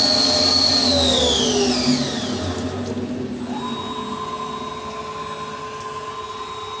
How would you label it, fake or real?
real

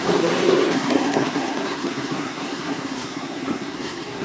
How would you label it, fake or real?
fake